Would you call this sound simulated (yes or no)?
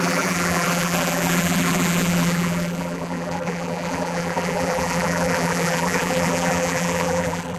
yes